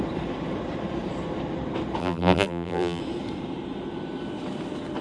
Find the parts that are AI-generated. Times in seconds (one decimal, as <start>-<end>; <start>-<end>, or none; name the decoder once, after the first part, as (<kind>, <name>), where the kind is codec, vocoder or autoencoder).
2.0-3.0 (vocoder, BigVGAN v2)